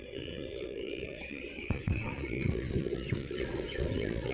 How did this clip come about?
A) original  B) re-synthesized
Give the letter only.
B